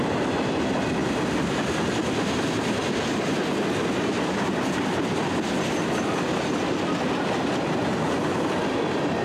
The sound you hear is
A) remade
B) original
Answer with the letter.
B